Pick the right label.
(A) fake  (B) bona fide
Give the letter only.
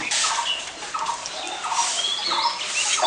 B